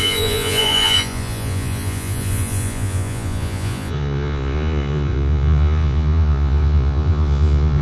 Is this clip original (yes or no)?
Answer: no